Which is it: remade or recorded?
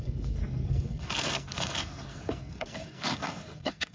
remade